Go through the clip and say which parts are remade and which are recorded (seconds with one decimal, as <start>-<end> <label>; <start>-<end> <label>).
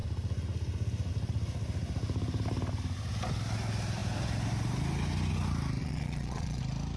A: 0.0-5.8 recorded; 5.8-6.6 remade; 6.6-7.0 recorded